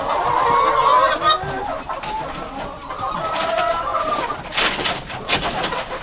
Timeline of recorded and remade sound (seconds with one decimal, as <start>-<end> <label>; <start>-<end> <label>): 0.0-6.0 recorded